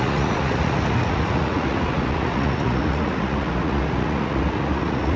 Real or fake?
fake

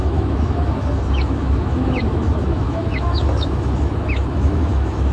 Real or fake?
fake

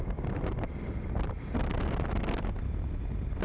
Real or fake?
real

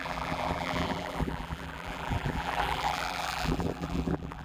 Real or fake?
fake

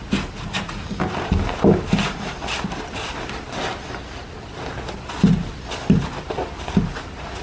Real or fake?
real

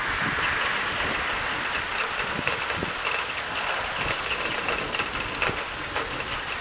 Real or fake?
real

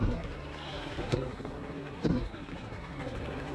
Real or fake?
fake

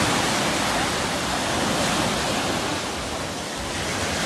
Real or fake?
real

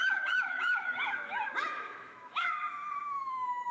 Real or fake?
fake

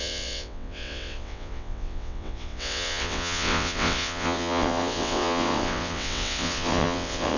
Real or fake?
fake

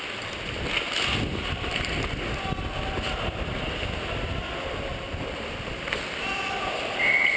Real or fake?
real